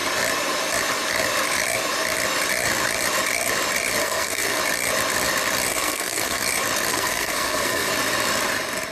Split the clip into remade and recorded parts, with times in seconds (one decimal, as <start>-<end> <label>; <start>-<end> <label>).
0.0-4.0 recorded; 4.0-4.6 remade; 4.6-5.7 recorded; 5.7-6.4 remade; 6.4-6.9 recorded; 6.9-7.9 remade; 7.9-8.9 recorded